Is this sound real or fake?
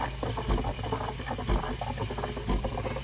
real